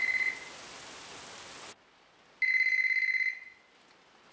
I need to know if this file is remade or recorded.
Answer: recorded